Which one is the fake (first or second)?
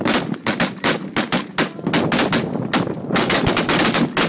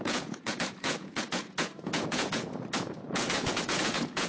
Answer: second